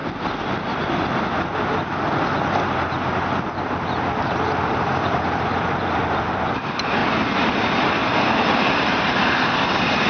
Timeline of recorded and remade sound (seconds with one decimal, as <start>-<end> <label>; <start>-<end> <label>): 0.0-4.2 recorded; 4.2-7.0 remade; 7.0-7.5 recorded; 7.5-8.0 remade; 8.0-8.6 recorded; 8.6-10.1 remade